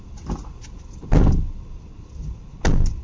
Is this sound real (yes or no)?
yes